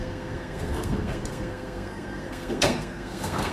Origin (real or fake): fake